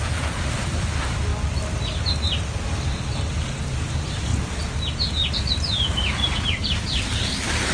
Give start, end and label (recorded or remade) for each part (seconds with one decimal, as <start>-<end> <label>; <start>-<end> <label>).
0.0-1.3 remade; 1.3-3.3 recorded; 3.3-4.3 remade; 4.3-5.3 recorded; 5.3-7.7 remade